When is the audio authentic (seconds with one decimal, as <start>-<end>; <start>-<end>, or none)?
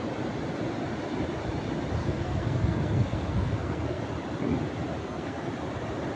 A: 0.0-2.0; 4.0-5.0; 5.5-6.2